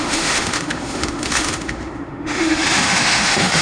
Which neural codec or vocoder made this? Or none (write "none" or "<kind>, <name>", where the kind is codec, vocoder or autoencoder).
autoencoder, DAC-VAE